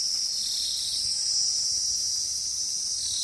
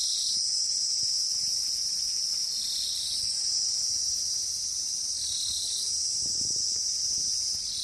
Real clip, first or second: first